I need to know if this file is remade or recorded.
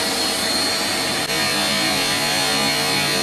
recorded